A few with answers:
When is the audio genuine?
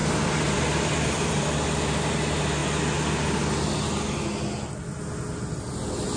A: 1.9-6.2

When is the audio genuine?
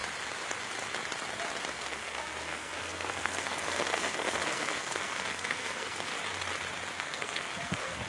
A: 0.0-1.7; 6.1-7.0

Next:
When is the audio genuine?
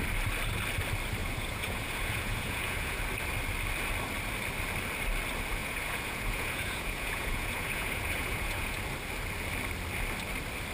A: 0.0-1.2; 3.0-5.6; 8.8-10.7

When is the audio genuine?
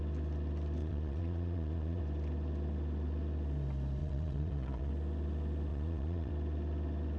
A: 0.0-0.8; 2.0-4.0; 4.9-5.7; 6.3-7.2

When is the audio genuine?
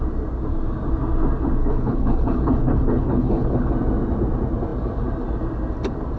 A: 0.0-1.6; 3.7-6.2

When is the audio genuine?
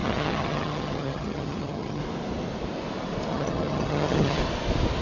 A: 2.0-3.3; 4.4-5.0